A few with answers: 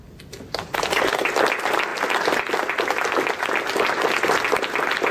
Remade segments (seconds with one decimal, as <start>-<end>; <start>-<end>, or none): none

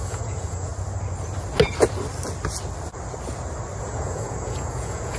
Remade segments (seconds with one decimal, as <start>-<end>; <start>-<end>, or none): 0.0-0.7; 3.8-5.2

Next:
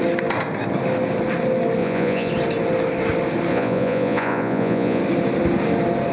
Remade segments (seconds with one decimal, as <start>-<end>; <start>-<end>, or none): 1.8-2.3; 3.5-5.0

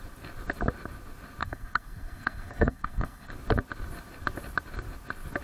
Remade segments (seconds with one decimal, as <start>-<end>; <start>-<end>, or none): 1.4-3.3

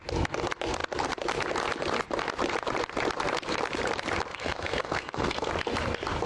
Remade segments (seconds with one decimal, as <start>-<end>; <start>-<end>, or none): 4.3-5.5

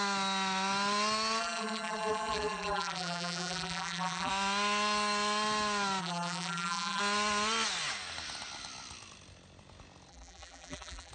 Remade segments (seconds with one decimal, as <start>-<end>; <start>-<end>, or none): 1.4-4.3; 6.0-7.0; 10.1-11.1

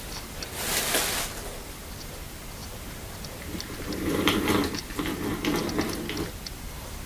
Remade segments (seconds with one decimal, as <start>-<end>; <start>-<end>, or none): 2.6-4.4

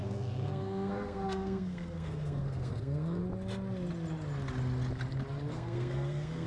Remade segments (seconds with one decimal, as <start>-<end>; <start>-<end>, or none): 0.0-3.2; 5.5-6.5